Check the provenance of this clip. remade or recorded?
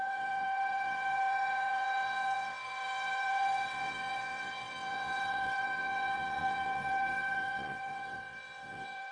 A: remade